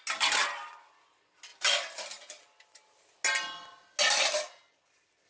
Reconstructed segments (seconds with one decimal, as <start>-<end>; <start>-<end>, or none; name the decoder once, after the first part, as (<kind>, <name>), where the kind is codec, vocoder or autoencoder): none